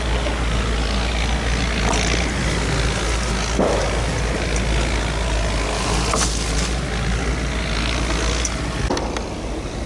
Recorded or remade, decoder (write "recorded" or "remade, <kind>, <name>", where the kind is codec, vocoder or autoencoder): recorded